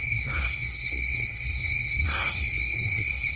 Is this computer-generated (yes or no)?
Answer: yes